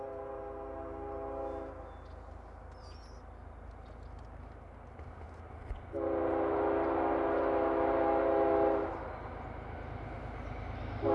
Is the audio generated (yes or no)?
no